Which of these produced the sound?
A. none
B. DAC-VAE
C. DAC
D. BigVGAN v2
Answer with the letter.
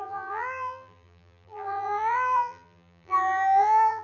D